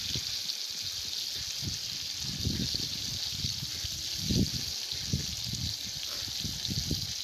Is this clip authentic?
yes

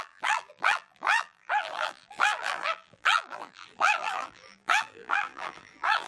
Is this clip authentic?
no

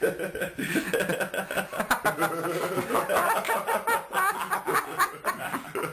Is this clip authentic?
yes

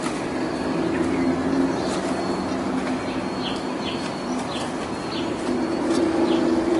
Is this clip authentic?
yes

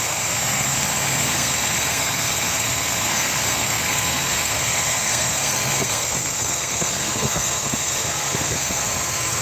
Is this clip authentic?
no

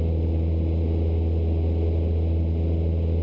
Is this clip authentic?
yes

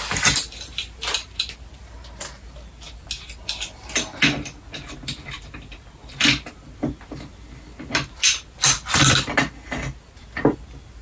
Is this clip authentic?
yes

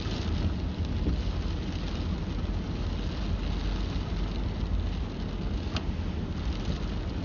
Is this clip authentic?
yes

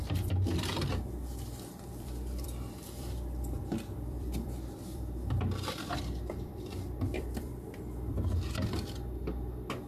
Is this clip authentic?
no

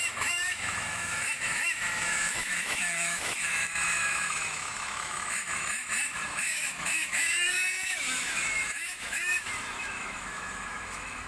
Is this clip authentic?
no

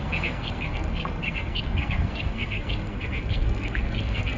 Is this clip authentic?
no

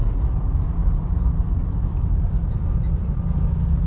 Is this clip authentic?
yes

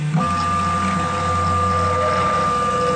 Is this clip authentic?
yes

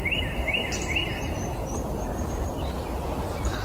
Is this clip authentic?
yes